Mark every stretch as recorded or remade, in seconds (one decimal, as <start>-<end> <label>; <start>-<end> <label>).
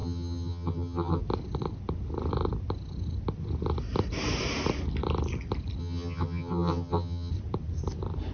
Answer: 0.0-1.2 remade; 1.2-5.8 recorded; 5.8-7.3 remade; 7.3-8.3 recorded